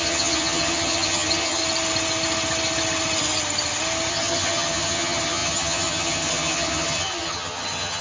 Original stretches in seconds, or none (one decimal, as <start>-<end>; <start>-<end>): 1.6-4.1